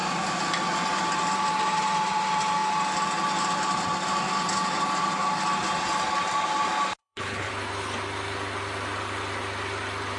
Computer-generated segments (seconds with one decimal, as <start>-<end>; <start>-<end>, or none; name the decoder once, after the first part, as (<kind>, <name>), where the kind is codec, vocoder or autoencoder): 7.0-7.5 (codec, HILCodec)